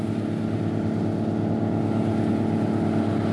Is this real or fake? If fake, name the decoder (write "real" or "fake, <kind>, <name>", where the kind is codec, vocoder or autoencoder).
real